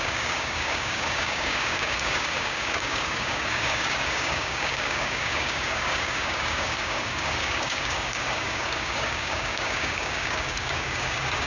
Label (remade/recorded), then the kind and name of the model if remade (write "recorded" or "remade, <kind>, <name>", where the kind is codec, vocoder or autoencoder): remade, codec, DAC